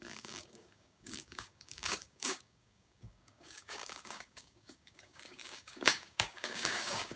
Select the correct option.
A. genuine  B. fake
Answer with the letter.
B